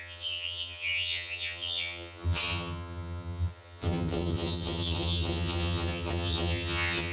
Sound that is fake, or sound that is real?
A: fake